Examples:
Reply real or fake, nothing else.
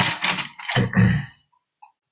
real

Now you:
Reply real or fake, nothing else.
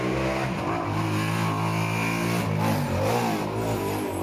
real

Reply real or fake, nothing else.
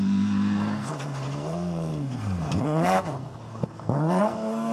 fake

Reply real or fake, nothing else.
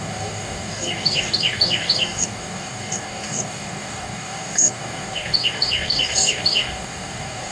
fake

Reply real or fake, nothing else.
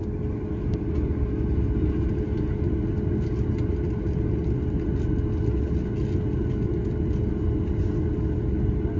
real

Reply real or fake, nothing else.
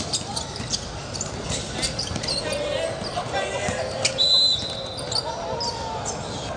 real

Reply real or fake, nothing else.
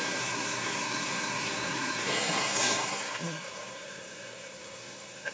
fake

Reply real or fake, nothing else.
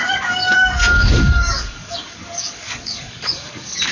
fake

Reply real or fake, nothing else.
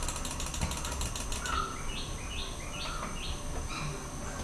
real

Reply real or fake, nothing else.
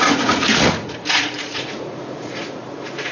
fake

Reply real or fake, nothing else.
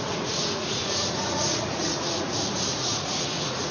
fake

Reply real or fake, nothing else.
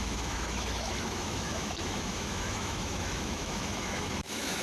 fake